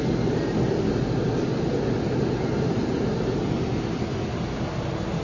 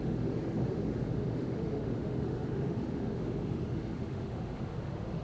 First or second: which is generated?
second